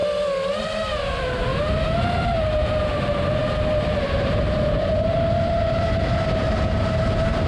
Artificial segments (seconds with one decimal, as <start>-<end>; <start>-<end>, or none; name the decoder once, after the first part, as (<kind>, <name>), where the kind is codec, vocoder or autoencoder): 0.6-1.5 (vocoder, BigVGAN v2); 2.4-7.5

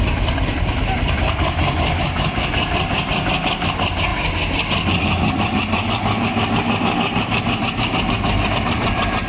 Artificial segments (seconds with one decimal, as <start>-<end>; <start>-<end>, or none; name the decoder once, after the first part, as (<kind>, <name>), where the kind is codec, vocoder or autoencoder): 0.0-9.3 (vocoder, BigVGAN v2)

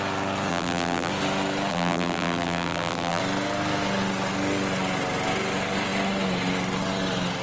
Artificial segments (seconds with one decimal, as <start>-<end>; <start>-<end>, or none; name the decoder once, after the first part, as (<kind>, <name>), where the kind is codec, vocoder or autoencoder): 0.5-1.1 (vocoder, BigVGAN v2); 1.7-3.2

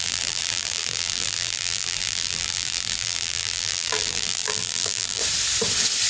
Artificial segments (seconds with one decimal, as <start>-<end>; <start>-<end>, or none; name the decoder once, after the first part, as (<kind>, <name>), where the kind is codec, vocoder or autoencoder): 0.0-5.2 (vocoder, BigVGAN v2)

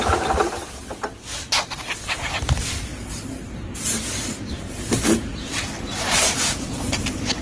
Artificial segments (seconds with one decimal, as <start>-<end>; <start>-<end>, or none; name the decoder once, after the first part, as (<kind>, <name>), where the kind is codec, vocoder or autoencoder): 0.0-0.6 (vocoder, BigVGAN v2); 3.8-7.4

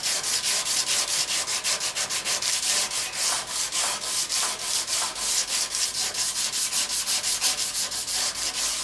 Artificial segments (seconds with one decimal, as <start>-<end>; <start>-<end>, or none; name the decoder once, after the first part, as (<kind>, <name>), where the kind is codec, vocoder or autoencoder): 0.0-1.1 (vocoder, BigVGAN v2)

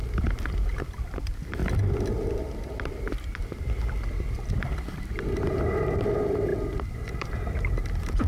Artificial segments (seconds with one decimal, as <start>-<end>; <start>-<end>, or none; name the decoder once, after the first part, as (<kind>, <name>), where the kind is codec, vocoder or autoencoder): 0.0-1.6 (vocoder, BigVGAN v2); 2.6-8.3

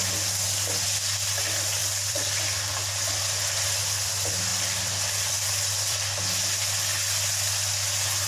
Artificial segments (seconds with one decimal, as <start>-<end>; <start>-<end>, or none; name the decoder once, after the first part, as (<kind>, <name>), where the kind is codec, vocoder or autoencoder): 1.8-2.4 (vocoder, BigVGAN v2); 4.5-6.2